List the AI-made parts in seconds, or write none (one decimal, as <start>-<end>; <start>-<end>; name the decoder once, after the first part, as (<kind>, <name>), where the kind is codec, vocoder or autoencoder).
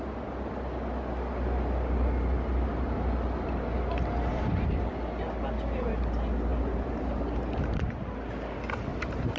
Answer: 6.5-7.6 (vocoder, BigVGAN v2); 8.9-9.4